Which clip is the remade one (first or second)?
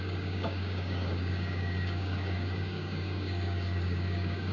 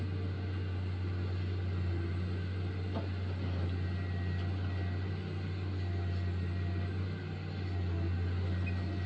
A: first